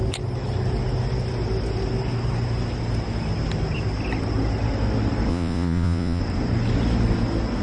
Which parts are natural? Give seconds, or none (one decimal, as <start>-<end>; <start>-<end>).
0.0-5.3; 6.2-7.6